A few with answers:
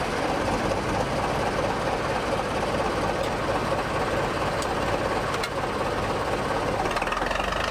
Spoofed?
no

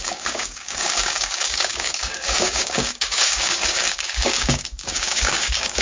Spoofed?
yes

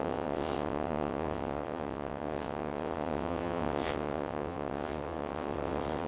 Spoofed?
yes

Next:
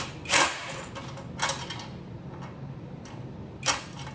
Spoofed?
no